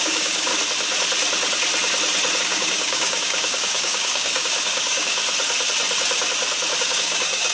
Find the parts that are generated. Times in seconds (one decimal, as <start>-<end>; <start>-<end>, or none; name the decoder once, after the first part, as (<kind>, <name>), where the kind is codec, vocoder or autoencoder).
0.0-0.5 (codec, DAC); 2.4-5.2; 6.8-7.5

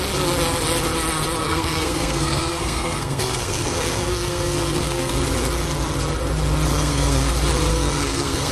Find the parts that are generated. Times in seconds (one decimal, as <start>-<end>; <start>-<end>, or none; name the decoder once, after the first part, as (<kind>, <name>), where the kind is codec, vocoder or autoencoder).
1.4-5.1 (codec, SNAC); 6.7-7.3; 7.7-8.5

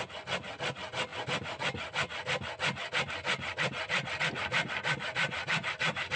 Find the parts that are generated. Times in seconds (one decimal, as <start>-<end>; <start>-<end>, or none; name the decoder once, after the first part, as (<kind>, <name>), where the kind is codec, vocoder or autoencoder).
none